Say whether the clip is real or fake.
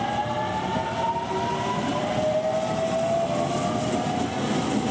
real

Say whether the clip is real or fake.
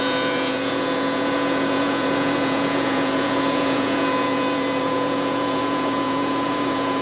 fake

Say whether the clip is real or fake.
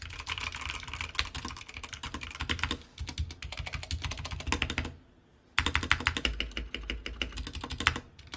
real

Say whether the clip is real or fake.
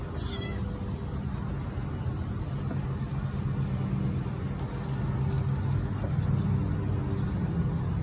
real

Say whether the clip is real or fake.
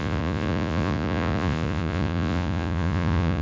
fake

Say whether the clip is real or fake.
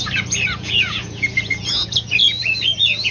fake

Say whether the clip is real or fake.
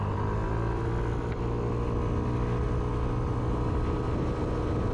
real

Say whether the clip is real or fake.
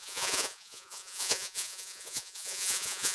fake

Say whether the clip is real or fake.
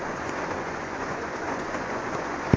fake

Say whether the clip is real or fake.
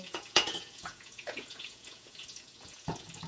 fake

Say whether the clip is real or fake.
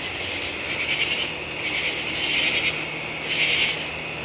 real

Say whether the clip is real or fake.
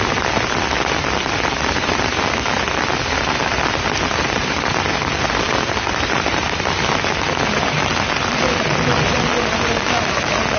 real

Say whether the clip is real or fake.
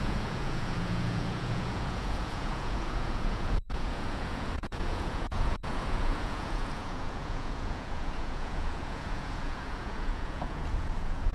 fake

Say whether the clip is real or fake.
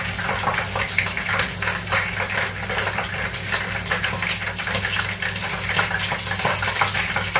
real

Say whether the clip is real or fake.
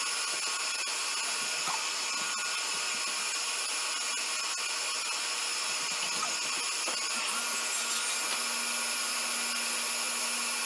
real